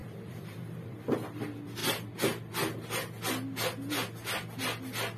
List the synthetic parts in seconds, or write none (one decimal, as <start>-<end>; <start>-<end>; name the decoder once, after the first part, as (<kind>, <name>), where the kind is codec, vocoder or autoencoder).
0.0-1.4 (vocoder, BigVGAN v2)